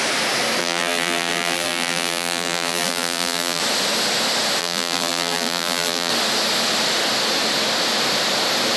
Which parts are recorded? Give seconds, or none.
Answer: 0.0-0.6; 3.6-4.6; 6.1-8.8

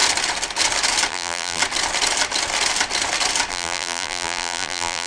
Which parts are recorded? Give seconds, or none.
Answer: 0.0-1.1; 1.6-3.5

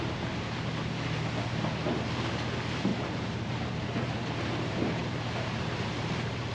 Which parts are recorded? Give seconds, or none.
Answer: 0.0-5.0

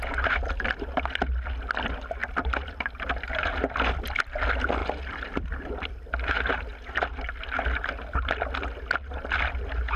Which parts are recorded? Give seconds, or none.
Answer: 0.0-2.2; 3.1-4.8; 5.7-10.0